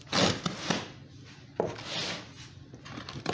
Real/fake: real